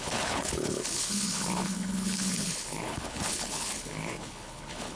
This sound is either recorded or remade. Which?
remade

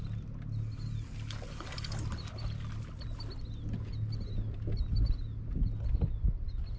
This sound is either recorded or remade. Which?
recorded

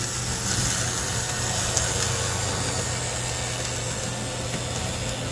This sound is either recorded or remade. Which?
recorded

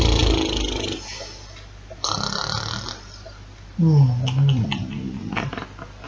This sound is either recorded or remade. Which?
recorded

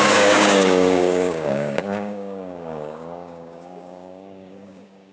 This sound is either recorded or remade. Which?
remade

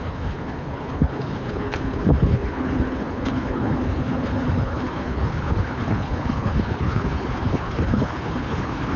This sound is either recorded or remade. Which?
remade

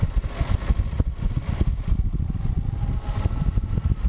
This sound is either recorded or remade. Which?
recorded